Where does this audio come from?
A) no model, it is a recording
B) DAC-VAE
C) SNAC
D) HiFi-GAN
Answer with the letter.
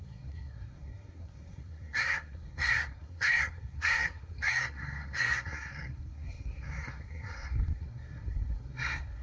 C